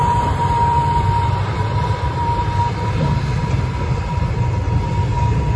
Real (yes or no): yes